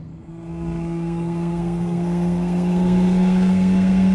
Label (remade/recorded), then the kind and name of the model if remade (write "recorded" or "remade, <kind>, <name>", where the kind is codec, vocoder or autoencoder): remade, codec, SNAC